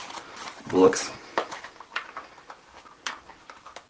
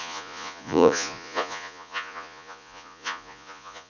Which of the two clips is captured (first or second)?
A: first